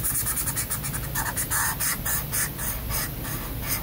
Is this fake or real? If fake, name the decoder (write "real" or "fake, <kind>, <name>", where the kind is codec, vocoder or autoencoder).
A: real